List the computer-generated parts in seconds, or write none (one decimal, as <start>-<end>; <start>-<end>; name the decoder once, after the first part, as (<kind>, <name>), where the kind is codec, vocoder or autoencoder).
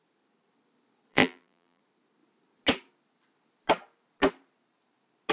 1.1-1.8 (vocoder, BigVGAN v2)